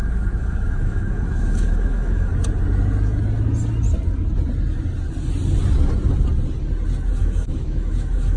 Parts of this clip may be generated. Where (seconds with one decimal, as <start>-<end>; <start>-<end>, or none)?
0.0-2.3; 7.2-8.4

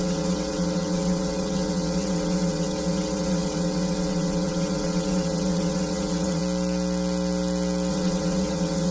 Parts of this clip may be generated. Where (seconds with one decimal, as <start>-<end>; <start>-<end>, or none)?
0.0-6.4; 7.9-8.9

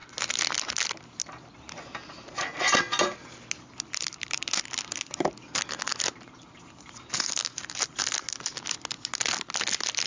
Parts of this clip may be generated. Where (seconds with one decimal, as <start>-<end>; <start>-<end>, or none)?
none

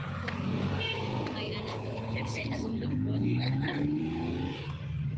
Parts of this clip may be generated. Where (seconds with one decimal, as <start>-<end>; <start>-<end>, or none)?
1.6-4.0

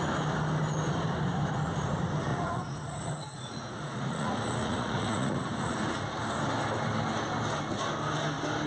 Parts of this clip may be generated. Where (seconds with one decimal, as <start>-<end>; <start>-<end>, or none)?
2.3-6.2